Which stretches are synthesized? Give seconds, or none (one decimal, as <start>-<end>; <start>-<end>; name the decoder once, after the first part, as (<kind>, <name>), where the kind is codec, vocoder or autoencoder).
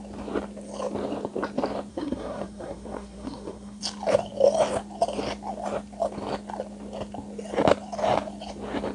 1.9-3.8 (codec, SNAC)